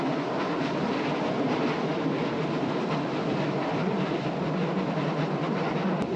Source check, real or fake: real